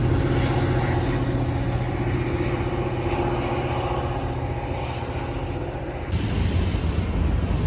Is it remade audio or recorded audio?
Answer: recorded